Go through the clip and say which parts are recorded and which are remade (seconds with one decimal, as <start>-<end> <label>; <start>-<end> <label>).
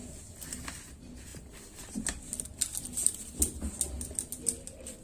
0.0-5.0 recorded